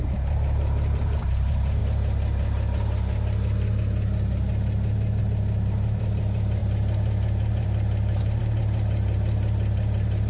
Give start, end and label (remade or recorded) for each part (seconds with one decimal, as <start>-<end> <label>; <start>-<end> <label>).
0.0-1.8 remade; 1.8-5.2 recorded; 5.2-10.3 remade